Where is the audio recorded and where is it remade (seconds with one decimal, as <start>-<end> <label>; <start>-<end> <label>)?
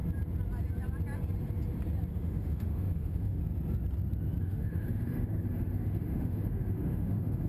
0.0-2.1 recorded; 2.1-3.4 remade; 3.4-4.4 recorded; 4.4-7.5 remade